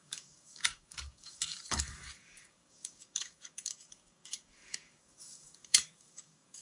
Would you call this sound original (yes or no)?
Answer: no